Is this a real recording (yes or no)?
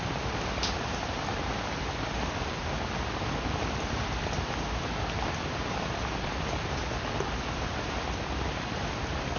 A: yes